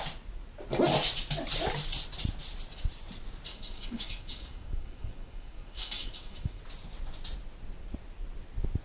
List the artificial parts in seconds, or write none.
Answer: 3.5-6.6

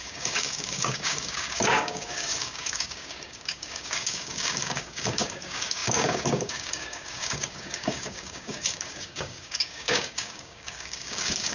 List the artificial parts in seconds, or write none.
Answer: 0.0-11.5

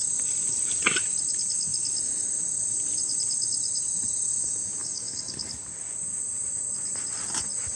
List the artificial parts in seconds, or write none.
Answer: 4.8-5.5

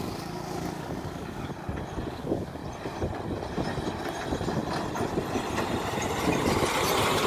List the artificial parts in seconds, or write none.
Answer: 0.0-1.5; 2.1-2.6

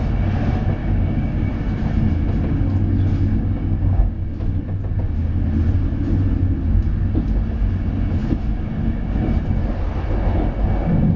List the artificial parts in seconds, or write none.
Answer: 0.8-1.5; 3.3-4.3